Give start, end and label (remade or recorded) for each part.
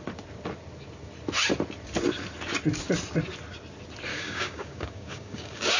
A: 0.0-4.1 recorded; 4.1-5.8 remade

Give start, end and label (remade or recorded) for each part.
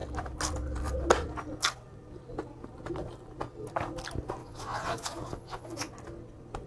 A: 0.0-4.4 recorded; 4.4-5.9 remade; 5.9-6.7 recorded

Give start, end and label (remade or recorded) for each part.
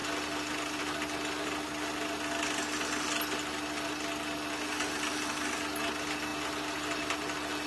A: 0.0-7.7 recorded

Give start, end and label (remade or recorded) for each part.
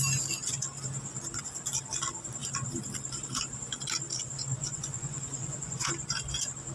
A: 0.0-4.6 recorded; 4.6-5.9 remade; 5.9-6.7 recorded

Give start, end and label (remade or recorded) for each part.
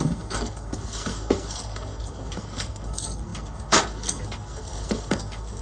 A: 0.0-5.6 remade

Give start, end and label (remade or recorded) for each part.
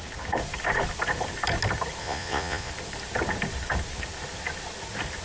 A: 0.0-2.0 recorded; 2.0-2.7 remade; 2.7-5.2 recorded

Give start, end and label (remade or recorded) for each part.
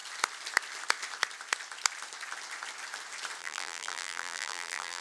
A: 0.0-3.4 recorded; 3.4-5.0 remade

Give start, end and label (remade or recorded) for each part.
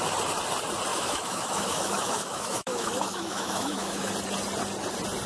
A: 0.0-0.9 recorded; 0.9-4.1 remade; 4.1-5.3 recorded